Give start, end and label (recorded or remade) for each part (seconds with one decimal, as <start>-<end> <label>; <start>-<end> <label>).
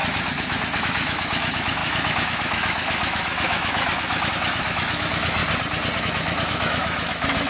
0.0-0.8 recorded; 0.8-5.4 remade; 5.4-6.0 recorded; 6.0-7.5 remade